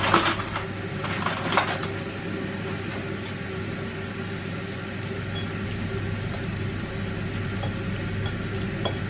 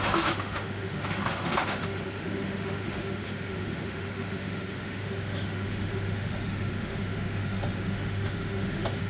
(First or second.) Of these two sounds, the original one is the first